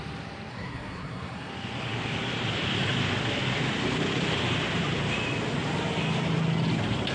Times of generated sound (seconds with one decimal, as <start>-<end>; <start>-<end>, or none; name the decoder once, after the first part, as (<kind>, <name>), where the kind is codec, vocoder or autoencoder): 0.5-1.5 (codec, SNAC)